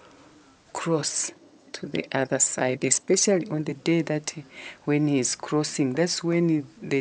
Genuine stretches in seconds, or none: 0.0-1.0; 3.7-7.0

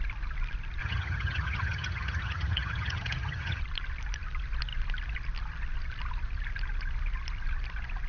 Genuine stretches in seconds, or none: 0.0-0.8; 3.6-8.1

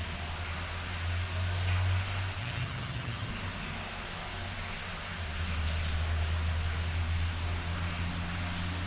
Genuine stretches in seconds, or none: 0.0-2.4; 3.3-8.9

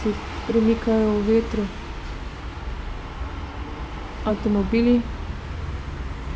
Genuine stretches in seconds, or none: 0.0-6.4

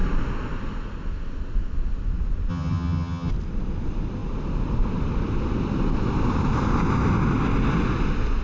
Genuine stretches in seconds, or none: 0.0-2.5; 3.3-8.4